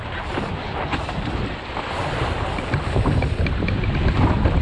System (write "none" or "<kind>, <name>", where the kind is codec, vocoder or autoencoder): none